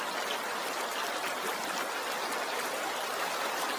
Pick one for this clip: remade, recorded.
recorded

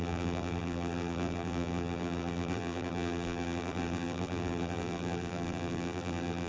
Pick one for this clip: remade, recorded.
remade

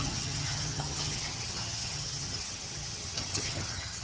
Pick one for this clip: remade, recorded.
remade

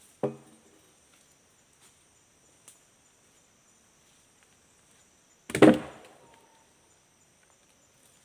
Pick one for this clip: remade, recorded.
recorded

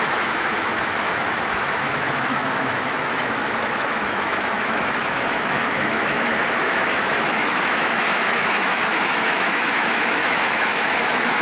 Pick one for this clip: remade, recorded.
remade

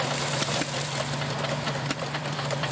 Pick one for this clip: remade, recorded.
remade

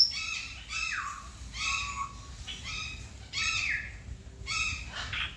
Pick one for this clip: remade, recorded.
recorded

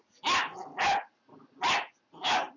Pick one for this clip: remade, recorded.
recorded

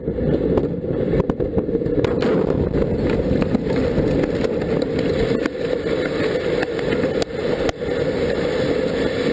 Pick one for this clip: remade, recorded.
recorded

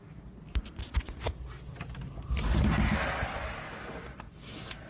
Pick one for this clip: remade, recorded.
recorded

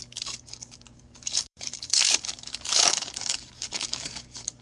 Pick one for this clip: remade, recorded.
remade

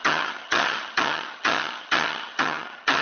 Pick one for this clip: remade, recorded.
remade